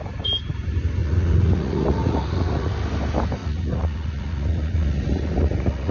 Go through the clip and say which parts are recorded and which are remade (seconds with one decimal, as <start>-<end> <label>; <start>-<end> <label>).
0.0-1.0 recorded; 1.0-2.7 remade; 2.7-3.4 recorded; 3.4-5.9 remade